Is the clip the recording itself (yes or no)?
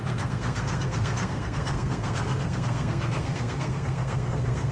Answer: no